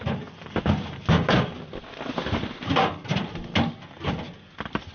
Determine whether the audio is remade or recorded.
recorded